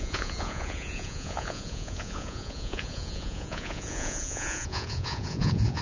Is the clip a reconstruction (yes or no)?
yes